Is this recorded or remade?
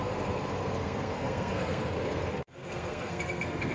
remade